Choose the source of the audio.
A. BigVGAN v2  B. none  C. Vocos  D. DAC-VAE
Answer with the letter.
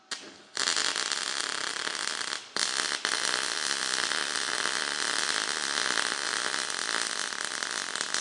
B